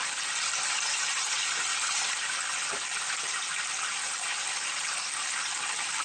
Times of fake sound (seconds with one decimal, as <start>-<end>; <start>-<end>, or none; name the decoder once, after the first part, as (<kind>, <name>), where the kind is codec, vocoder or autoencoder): none